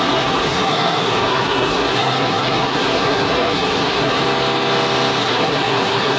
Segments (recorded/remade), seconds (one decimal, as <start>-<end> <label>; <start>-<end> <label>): 0.0-4.2 remade; 4.2-5.2 recorded; 5.2-6.2 remade